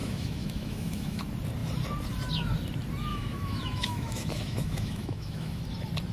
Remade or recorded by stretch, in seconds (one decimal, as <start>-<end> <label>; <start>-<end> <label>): 0.0-1.2 remade; 1.2-3.1 recorded; 3.1-5.6 remade; 5.6-6.1 recorded